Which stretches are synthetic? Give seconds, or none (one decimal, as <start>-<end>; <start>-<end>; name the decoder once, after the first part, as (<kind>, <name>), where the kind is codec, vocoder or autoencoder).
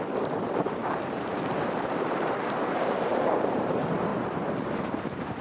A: 0.0-4.1 (vocoder, BigVGAN v2); 4.7-5.4